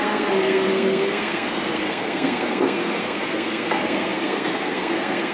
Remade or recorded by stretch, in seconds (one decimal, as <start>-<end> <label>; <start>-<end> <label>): 0.0-5.3 remade